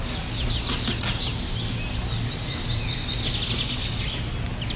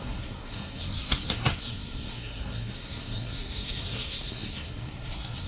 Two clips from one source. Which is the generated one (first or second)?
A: second